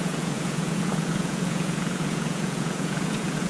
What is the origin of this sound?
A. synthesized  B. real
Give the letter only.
A